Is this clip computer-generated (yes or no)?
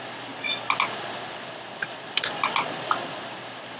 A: no